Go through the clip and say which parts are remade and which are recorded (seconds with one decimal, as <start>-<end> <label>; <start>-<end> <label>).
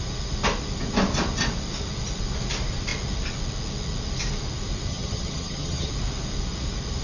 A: 0.0-4.9 recorded; 4.9-5.9 remade; 5.9-7.0 recorded